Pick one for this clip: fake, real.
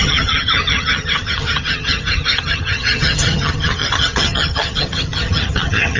fake